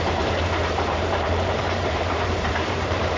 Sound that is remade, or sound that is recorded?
remade